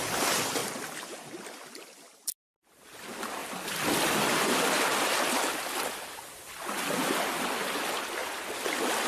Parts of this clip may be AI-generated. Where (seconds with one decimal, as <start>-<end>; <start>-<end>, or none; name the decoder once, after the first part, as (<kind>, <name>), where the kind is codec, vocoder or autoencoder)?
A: 0.6-1.7 (vocoder, BigVGAN v2); 3.4-4.2; 8.2-9.1